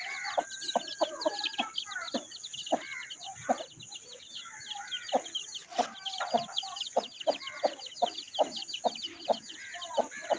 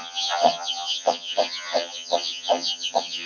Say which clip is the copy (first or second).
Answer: second